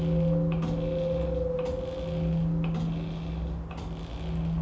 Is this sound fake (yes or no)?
no